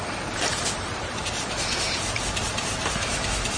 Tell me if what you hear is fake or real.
fake